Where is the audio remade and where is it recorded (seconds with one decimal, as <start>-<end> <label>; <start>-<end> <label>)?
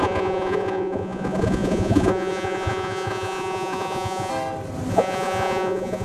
0.0-4.3 remade; 4.3-4.9 recorded; 4.9-6.0 remade